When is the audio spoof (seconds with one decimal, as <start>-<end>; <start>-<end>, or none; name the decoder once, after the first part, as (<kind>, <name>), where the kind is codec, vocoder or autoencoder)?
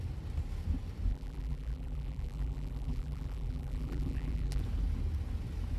1.1-4.6 (vocoder, BigVGAN v2)